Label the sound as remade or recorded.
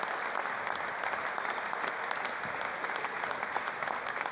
recorded